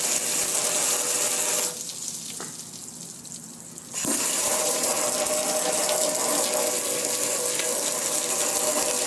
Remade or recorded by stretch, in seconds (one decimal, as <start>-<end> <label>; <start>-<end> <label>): 0.0-4.1 recorded; 4.1-4.9 remade; 4.9-9.1 recorded